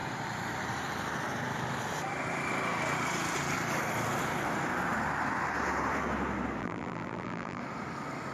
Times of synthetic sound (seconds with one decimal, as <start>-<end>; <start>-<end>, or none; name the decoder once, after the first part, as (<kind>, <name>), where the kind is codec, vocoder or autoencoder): 6.6-7.6 (vocoder, BigVGAN v2)